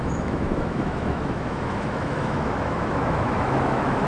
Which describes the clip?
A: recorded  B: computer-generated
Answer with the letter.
B